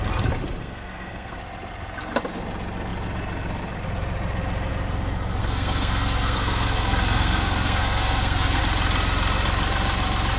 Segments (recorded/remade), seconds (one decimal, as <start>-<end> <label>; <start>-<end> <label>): 0.0-0.6 recorded; 0.6-1.4 remade; 1.4-5.4 recorded; 5.4-8.6 remade; 8.6-10.4 recorded